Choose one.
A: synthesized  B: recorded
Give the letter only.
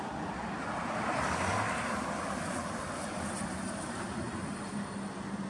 B